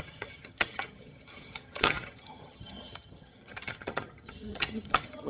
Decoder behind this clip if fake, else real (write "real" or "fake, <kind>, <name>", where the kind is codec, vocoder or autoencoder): fake, vocoder, HiFi-GAN